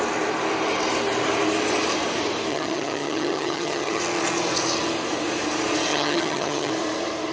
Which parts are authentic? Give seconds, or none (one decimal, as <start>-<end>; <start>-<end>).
0.0-2.5; 4.0-5.9; 6.7-7.3